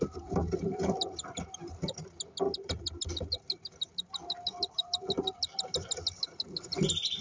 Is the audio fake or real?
real